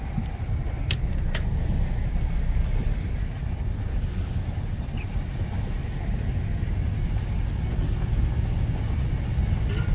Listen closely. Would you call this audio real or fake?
real